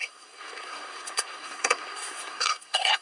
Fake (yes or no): yes